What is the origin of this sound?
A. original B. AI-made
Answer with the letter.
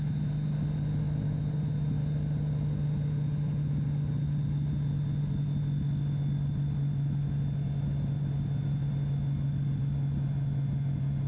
A